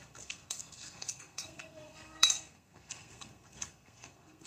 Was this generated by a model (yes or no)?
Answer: yes